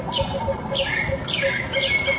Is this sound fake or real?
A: real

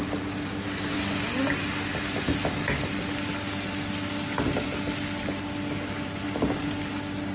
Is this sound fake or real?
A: real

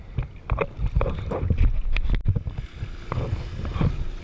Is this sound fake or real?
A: real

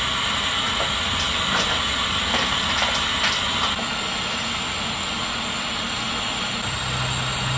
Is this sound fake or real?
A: real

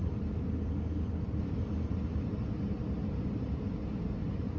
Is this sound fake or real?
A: real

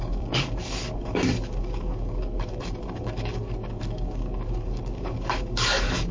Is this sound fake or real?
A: fake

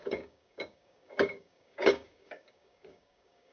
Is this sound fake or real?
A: fake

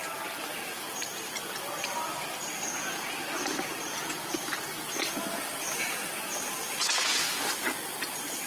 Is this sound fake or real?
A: real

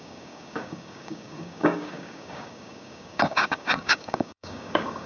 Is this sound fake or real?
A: fake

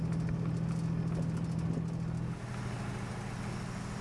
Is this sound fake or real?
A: real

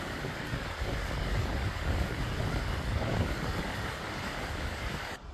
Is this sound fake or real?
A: fake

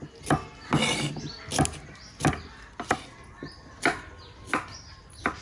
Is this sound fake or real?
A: real